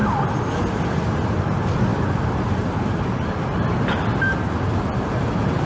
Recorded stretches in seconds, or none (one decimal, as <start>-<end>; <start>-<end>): 0.0-5.7